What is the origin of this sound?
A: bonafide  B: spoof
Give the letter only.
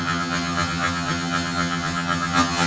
B